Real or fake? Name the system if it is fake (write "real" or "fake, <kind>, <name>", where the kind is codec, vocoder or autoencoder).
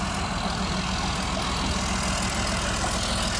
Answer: real